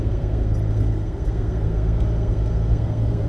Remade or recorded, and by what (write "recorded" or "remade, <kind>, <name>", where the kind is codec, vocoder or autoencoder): remade, codec, SNAC